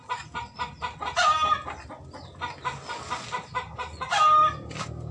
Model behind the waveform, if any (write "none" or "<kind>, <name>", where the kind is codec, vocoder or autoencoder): none